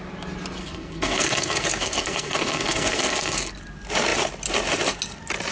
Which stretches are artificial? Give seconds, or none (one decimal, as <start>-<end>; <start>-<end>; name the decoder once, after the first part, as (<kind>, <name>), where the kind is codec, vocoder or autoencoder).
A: 0.6-3.5 (codec, SNAC)